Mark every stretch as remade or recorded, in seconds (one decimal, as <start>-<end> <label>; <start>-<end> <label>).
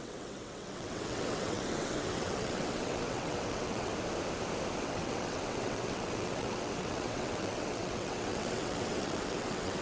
0.0-3.9 remade; 3.9-4.8 recorded; 4.8-9.8 remade